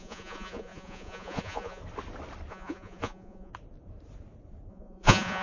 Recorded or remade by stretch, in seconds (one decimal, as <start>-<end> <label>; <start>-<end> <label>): 0.0-1.8 remade; 1.8-2.5 recorded; 2.5-3.5 remade; 3.5-4.7 recorded; 4.7-5.4 remade